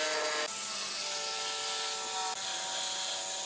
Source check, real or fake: real